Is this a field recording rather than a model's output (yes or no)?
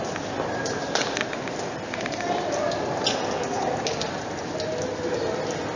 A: yes